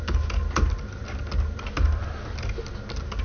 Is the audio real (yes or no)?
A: yes